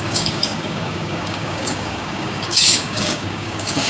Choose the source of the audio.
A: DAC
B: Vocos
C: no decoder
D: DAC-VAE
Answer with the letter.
A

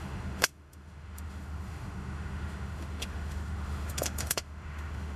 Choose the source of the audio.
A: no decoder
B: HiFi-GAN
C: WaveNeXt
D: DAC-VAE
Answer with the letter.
D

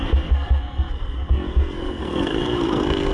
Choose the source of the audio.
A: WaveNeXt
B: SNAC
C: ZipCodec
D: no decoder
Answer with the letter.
B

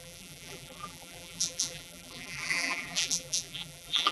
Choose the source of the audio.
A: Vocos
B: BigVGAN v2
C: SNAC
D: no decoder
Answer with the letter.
B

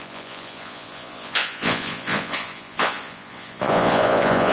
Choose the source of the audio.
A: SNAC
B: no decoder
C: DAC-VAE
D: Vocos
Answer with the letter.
D